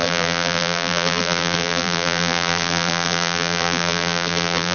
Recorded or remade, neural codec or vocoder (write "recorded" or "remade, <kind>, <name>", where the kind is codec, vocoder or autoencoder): remade, vocoder, BigVGAN v2